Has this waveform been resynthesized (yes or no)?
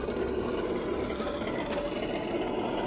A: no